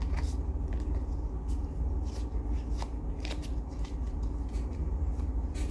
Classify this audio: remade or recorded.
recorded